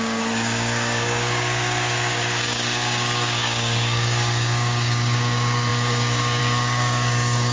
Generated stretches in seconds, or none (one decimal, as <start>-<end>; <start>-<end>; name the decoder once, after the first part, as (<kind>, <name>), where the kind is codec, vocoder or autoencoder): 0.0-7.5 (codec, DAC)